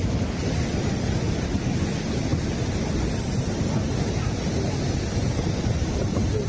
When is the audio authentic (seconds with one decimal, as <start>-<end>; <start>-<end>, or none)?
2.3-5.6